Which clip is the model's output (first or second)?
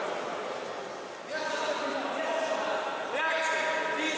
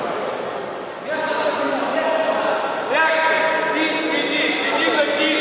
first